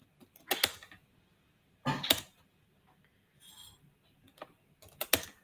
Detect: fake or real real